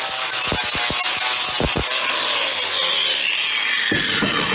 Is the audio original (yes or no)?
yes